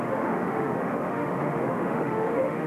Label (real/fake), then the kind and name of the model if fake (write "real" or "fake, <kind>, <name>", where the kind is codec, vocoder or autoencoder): fake, autoencoder, DAC-VAE